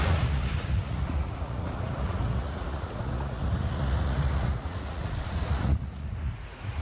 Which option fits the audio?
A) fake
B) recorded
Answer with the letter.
A